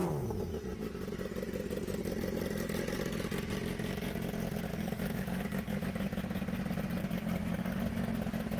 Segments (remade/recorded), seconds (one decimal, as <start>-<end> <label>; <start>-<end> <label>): 0.0-4.7 recorded; 4.7-5.8 remade; 5.8-7.0 recorded; 7.0-7.8 remade; 7.8-8.6 recorded